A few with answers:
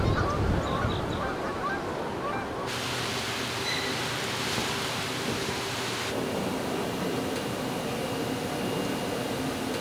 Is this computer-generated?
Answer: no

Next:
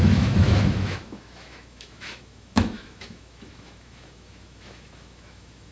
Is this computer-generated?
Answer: yes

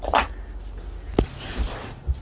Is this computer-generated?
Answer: no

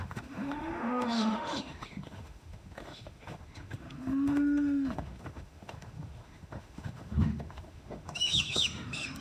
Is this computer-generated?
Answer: yes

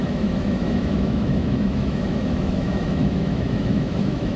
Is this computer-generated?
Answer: yes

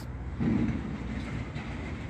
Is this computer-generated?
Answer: no